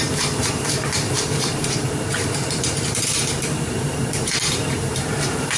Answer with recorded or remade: remade